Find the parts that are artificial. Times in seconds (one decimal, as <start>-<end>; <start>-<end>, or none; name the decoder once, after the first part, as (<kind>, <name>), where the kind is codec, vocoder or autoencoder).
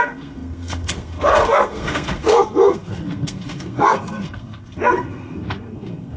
0.0-6.2 (codec, SNAC)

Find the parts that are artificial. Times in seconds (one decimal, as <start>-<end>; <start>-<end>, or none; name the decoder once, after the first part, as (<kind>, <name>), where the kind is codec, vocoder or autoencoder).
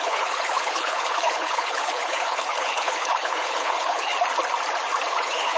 0.0-4.1 (codec, HILCodec); 5.1-5.6